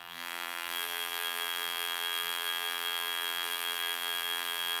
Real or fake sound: fake